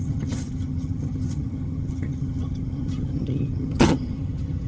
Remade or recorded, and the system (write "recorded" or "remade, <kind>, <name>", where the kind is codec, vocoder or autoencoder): remade, vocoder, HiFi-GAN